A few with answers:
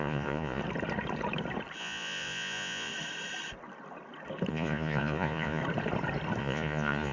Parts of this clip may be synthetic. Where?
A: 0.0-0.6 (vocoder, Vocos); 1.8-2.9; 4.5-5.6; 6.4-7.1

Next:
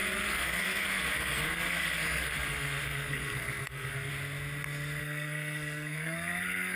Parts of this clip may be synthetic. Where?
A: 0.0-4.1 (codec, SNAC); 5.0-6.8

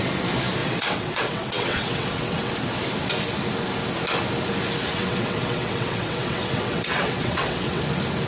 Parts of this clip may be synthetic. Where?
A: 0.6-2.5 (vocoder, WaveNeXt); 4.9-7.8